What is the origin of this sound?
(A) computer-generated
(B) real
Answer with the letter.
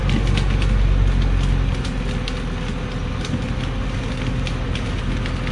B